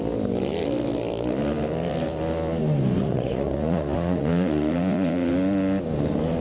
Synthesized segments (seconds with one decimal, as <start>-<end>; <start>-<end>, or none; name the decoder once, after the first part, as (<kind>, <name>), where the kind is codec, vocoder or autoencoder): 3.0-5.3 (vocoder, Vocos)